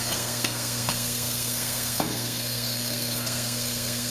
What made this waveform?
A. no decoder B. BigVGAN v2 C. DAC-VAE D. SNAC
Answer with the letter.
D